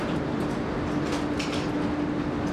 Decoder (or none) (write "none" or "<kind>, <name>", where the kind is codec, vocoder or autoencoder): none